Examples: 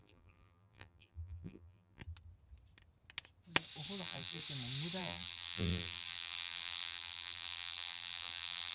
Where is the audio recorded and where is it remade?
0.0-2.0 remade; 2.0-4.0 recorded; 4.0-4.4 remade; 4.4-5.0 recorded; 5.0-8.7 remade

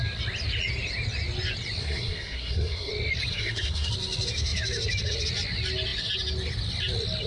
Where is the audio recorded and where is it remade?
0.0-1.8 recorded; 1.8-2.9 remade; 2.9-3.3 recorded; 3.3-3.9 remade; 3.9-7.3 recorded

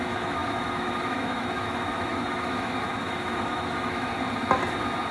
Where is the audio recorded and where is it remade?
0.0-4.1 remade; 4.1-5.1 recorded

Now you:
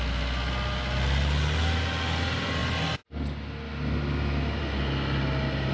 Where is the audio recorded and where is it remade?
0.0-5.7 recorded

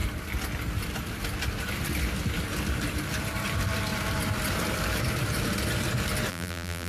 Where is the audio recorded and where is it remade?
0.0-6.3 recorded; 6.3-6.9 remade